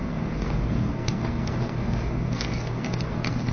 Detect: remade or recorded remade